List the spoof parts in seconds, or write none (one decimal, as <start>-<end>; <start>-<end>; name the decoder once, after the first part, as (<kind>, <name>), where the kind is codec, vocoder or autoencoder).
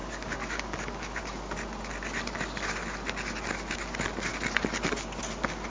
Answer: 0.0-1.2 (codec, DAC)